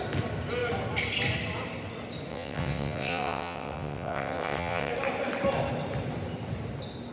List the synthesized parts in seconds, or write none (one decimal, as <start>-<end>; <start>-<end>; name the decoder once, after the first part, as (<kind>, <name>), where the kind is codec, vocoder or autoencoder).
2.3-4.9 (vocoder, WaveNeXt)